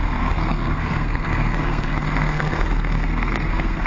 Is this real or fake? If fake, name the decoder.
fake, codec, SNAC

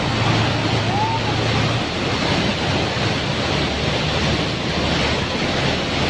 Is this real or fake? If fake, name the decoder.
real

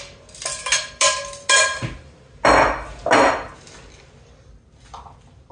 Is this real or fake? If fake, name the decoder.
real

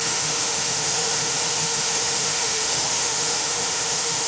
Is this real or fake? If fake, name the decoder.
fake, autoencoder, DAC-VAE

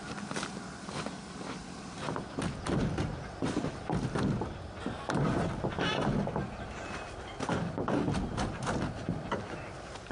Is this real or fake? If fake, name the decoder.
real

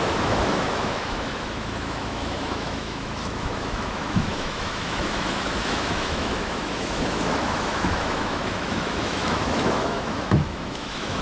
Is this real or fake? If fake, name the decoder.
fake, autoencoder, DAC-VAE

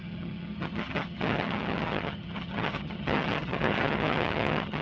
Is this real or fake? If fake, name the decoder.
fake, vocoder, HiFi-GAN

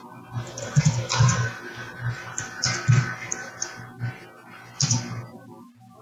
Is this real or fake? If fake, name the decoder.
real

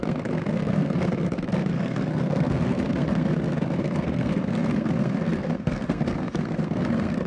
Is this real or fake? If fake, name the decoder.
fake, codec, SNAC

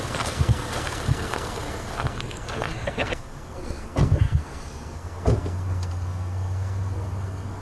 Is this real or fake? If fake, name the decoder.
fake, codec, SNAC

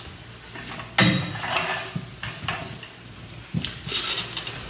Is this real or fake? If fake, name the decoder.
real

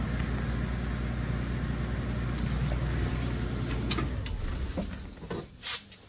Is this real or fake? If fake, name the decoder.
real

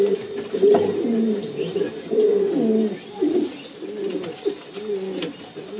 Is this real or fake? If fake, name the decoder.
real